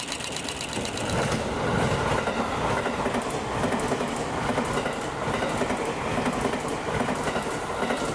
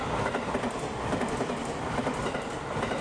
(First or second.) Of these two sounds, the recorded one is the first